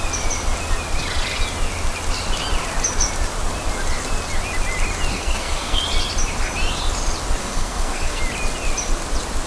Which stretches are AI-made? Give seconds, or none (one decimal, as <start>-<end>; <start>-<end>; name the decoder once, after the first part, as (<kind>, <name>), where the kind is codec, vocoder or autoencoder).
5.1-5.8 (codec, SNAC); 7.4-8.2